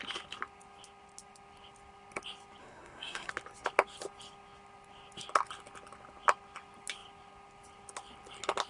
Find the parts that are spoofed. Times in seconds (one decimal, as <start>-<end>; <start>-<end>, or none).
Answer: 2.6-3.3